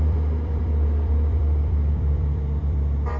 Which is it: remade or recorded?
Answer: remade